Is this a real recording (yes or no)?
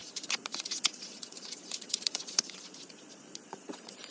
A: no